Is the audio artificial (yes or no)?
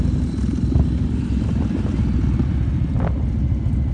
no